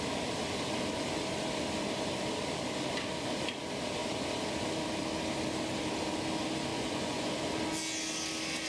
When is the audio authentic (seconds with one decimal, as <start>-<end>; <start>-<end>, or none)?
0.0-6.7; 7.5-8.7